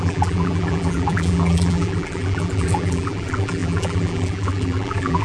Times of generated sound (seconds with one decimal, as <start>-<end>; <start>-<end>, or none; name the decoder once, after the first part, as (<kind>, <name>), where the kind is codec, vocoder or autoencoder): 0.0-5.2 (vocoder, BigVGAN v2)